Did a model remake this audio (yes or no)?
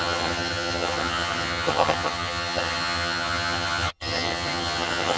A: yes